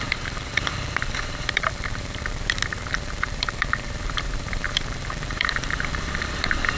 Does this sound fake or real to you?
fake